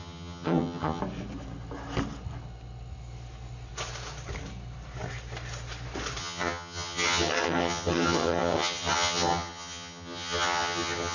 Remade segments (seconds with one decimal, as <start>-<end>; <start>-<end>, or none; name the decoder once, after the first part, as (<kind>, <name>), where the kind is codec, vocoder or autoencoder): 0.0-1.0 (vocoder, HiFi-GAN); 6.2-11.1